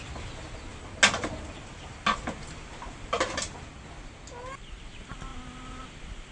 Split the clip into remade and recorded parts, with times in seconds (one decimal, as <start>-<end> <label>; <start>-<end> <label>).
0.0-6.3 recorded